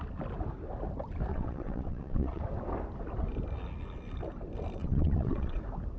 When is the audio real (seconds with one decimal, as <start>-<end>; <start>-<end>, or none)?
0.0-1.3; 2.4-4.8; 5.6-6.0